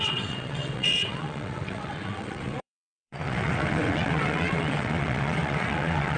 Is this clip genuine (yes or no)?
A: no